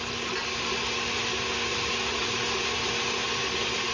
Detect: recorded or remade recorded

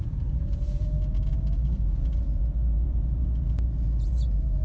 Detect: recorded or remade remade